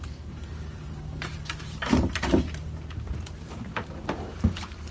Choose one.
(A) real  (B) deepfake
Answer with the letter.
B